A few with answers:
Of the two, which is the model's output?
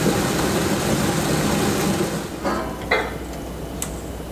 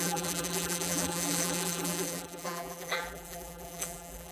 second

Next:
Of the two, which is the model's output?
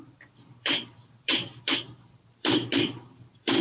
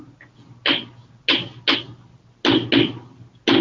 first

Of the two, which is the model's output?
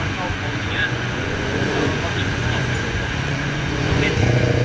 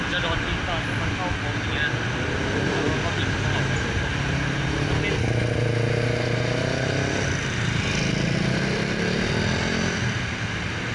first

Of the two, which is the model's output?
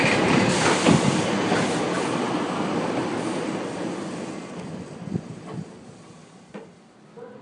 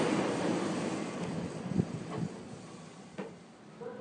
second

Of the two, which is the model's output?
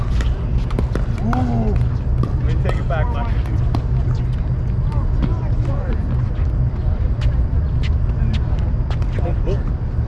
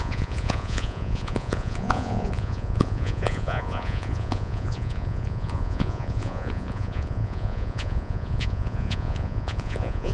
second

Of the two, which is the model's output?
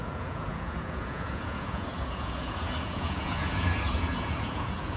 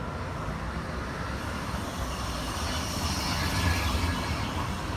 first